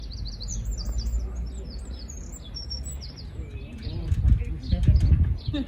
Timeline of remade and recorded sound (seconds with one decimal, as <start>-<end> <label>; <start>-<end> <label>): 0.0-5.7 recorded